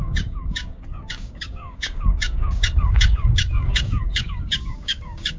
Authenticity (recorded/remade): remade